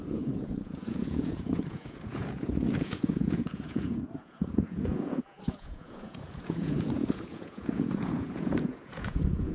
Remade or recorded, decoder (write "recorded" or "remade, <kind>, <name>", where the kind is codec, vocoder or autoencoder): remade, vocoder, Vocos